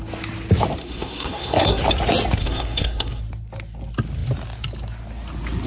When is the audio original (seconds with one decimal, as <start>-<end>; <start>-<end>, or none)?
0.0-0.8; 1.8-2.4; 3.2-5.7